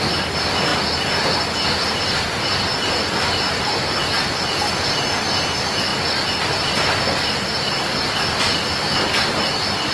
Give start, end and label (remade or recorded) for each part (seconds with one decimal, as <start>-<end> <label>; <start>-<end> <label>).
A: 0.0-9.9 recorded